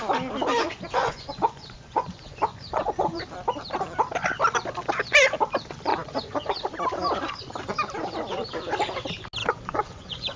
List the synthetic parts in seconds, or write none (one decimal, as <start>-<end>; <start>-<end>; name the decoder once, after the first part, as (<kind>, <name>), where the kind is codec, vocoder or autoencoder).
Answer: 0.6-3.2 (vocoder, Vocos); 5.9-6.5; 9.4-10.4